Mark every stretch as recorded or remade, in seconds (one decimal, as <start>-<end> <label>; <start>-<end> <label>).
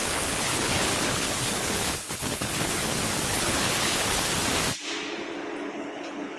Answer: 0.0-2.8 remade; 2.8-3.3 recorded; 3.3-4.4 remade; 4.4-5.7 recorded; 5.7-6.4 remade